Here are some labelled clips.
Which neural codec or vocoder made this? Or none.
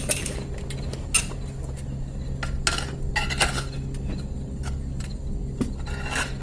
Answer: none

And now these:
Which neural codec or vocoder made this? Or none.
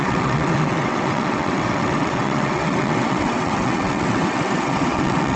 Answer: vocoder, WaveNeXt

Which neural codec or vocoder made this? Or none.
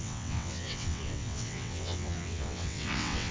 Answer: vocoder, WaveNeXt